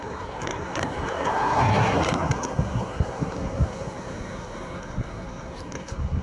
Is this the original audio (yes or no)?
no